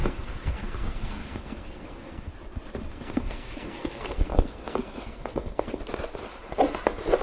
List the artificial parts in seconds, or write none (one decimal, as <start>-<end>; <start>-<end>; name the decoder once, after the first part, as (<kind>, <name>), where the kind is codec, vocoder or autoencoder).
0.0-2.3 (codec, SNAC); 2.9-5.8